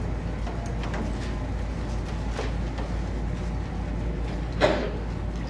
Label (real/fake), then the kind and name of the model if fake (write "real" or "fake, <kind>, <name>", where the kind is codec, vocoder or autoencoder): real